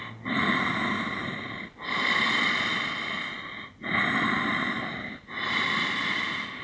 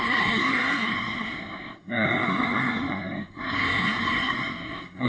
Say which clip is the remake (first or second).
second